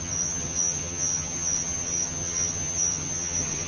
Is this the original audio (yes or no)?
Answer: no